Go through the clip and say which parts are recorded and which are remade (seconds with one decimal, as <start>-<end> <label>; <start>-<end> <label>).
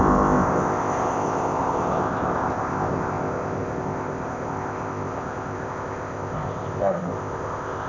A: 0.0-7.9 remade